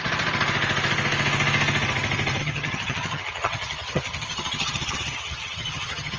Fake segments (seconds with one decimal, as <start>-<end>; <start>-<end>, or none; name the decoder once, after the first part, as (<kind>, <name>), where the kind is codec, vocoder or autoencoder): 2.4-6.2 (vocoder, HiFi-GAN)